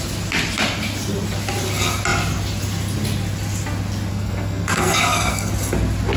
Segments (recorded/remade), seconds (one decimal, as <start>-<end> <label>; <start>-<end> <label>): 0.0-4.1 recorded; 4.1-5.5 remade; 5.5-6.2 recorded